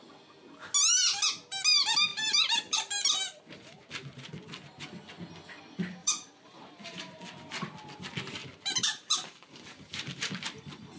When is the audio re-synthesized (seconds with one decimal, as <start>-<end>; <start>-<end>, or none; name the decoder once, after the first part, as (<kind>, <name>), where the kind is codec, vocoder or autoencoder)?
2.1-3.4 (vocoder, BigVGAN v2); 6.0-7.2; 8.4-10.3